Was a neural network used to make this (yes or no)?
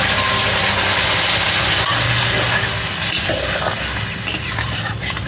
no